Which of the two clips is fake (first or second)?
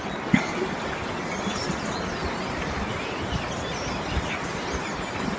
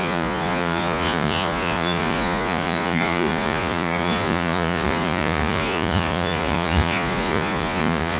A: second